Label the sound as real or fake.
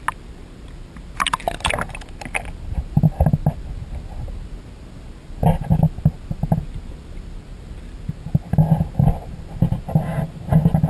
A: real